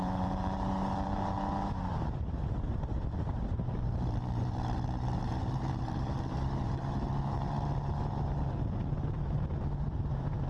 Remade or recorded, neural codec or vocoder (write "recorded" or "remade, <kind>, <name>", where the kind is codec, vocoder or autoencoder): remade, vocoder, BigVGAN v2